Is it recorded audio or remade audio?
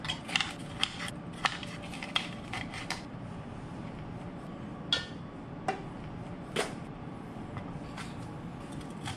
recorded